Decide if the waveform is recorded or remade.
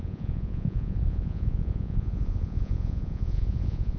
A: remade